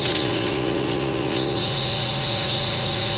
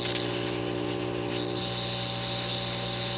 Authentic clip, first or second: second